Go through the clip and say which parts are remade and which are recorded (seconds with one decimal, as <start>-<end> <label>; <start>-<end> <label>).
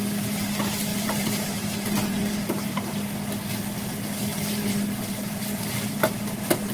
0.0-0.9 recorded; 0.9-3.0 remade; 3.0-4.3 recorded; 4.3-5.4 remade; 5.4-6.7 recorded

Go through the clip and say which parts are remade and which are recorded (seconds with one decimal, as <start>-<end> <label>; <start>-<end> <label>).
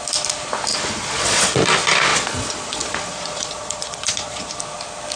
0.0-0.7 recorded; 0.7-1.6 remade; 1.6-2.1 recorded; 2.1-4.6 remade; 4.6-5.2 recorded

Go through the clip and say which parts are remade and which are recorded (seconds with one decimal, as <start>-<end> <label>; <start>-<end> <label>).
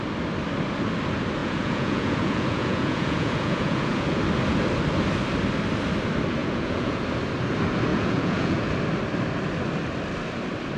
0.0-1.4 recorded; 1.4-4.2 remade; 4.2-6.4 recorded; 6.4-7.0 remade; 7.0-7.9 recorded; 7.9-8.6 remade; 8.6-10.8 recorded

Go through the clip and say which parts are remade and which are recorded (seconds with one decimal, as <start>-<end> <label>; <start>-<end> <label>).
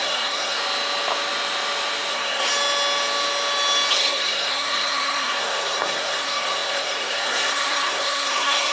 0.0-0.6 remade; 0.6-2.1 recorded; 2.1-2.5 remade; 2.5-3.9 recorded; 3.9-8.7 remade